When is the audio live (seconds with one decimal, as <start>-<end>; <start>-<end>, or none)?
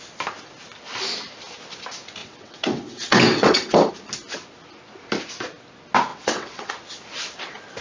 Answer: 0.0-2.2; 3.9-6.1; 6.7-7.8